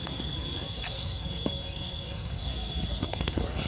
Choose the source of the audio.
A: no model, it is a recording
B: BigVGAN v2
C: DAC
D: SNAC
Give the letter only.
D